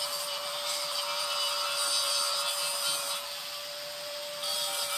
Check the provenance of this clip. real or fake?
fake